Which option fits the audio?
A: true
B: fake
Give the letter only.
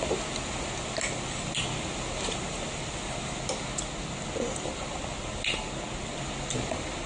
A